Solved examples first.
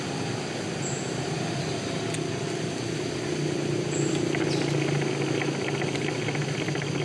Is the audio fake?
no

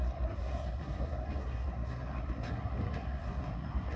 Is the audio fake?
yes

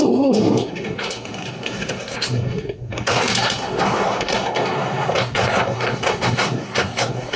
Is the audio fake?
yes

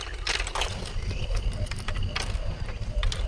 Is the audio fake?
no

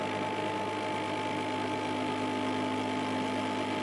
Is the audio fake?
no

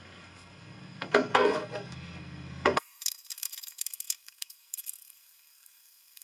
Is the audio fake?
yes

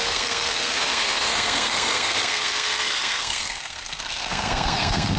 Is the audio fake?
yes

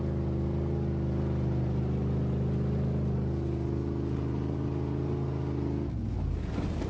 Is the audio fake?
no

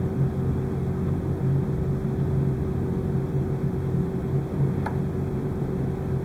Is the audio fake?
no